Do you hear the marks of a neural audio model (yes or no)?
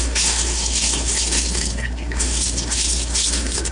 yes